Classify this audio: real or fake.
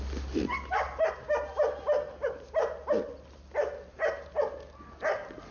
real